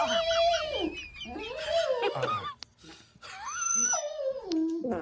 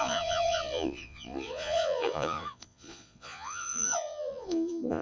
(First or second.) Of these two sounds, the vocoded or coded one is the second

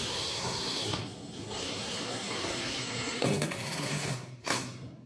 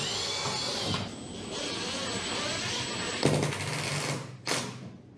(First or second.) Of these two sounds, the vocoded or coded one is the first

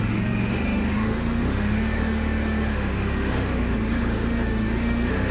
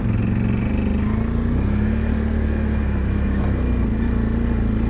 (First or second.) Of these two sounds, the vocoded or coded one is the first